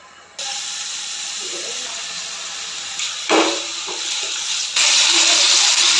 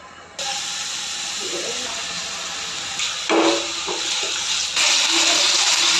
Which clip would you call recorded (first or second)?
second